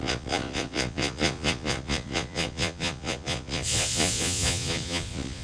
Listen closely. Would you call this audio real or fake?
fake